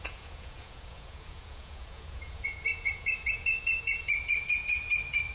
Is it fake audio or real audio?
fake